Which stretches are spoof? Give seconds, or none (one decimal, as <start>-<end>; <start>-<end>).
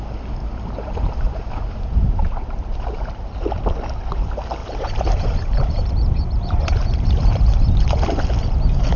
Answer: 0.4-3.3; 4.6-7.5